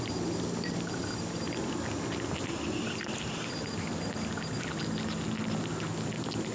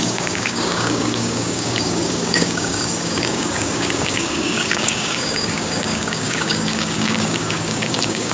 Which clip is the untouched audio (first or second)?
first